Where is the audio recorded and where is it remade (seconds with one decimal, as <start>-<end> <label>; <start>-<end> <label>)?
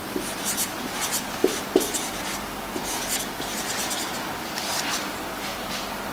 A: 0.0-6.1 recorded